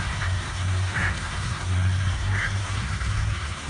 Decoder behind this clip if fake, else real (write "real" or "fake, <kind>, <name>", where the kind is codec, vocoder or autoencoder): fake, codec, SNAC